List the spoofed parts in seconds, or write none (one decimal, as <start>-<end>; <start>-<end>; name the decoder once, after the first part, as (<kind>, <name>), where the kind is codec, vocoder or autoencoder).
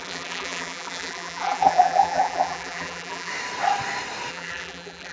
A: 0.0-3.3 (vocoder, BigVGAN v2); 4.3-5.1